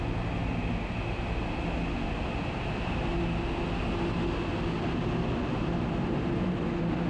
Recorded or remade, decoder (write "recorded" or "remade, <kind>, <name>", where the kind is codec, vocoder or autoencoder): recorded